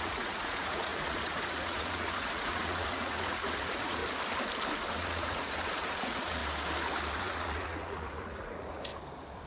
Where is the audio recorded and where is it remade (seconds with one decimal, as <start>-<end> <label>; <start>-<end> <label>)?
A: 0.0-4.0 remade; 4.0-4.9 recorded; 4.9-6.4 remade; 6.4-7.2 recorded; 7.2-8.9 remade; 8.9-9.5 recorded